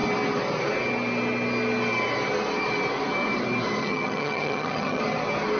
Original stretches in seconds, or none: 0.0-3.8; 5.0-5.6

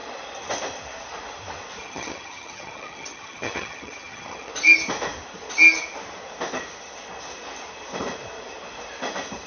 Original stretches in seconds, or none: 0.0-1.8; 4.5-9.5

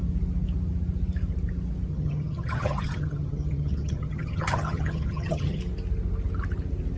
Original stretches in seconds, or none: 0.0-1.9; 5.6-7.0

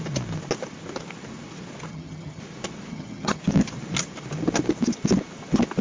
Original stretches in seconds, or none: 0.0-1.9; 2.4-2.9; 3.4-5.8

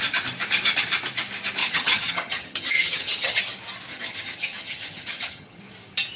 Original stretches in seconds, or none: 0.0-1.6; 3.4-3.9; 5.6-6.2

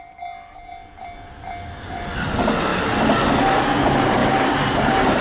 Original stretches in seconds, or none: 0.0-5.2